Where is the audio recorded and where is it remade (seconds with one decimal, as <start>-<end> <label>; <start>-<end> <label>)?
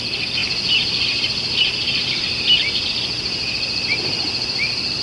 0.0-5.0 recorded